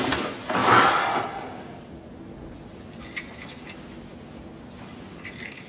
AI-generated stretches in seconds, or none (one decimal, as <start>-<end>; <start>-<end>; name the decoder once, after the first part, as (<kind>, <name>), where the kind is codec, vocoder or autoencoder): none